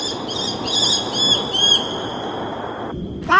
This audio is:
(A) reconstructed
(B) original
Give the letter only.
B